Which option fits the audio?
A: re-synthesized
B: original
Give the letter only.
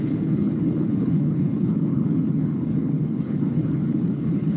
A